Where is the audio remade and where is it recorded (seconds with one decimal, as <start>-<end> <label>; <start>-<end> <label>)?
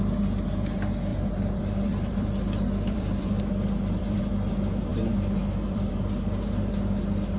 0.0-1.1 recorded; 1.1-4.2 remade; 4.2-4.9 recorded; 4.9-5.9 remade; 5.9-7.4 recorded